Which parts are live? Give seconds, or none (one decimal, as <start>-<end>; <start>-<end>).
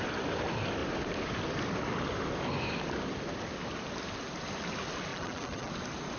0.0-5.1; 5.7-6.2